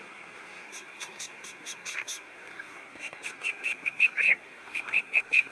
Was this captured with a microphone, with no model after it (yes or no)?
no